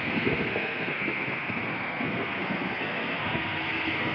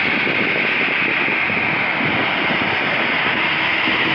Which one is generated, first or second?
first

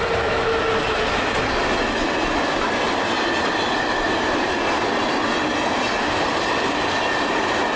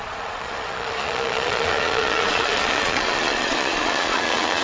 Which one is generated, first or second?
second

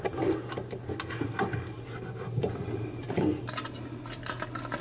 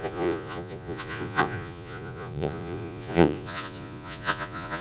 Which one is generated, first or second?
second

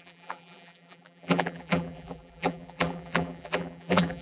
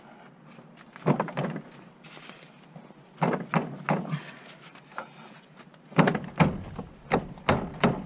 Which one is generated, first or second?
first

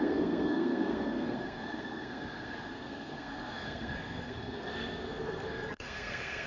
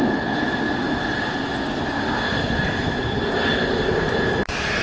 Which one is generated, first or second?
first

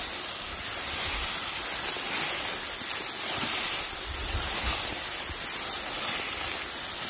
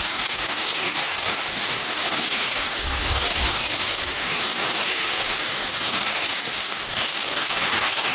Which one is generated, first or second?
second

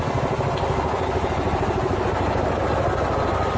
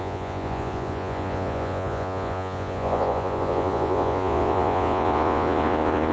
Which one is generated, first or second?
second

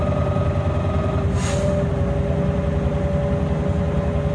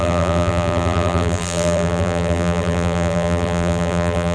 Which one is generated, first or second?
second